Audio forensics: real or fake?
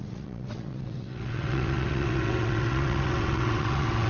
fake